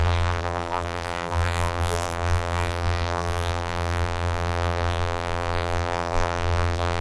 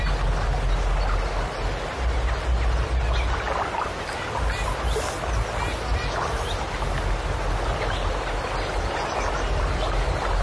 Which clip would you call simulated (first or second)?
first